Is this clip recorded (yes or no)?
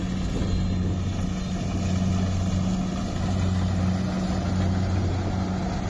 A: yes